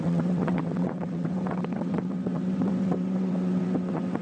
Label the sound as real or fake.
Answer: fake